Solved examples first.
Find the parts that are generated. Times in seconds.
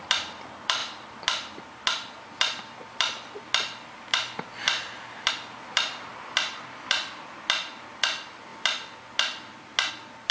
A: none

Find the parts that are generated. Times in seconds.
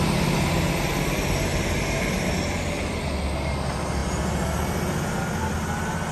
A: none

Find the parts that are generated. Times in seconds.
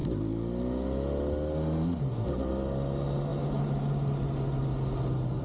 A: none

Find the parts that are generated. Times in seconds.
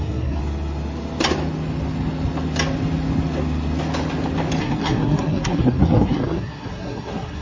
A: 0.0-0.4; 4.6-7.4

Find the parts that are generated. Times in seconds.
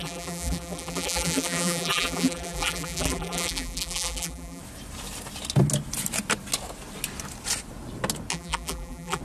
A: 0.0-4.6; 8.3-9.2